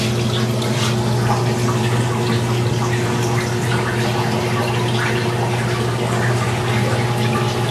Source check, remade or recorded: recorded